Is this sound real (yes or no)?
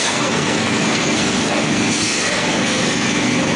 no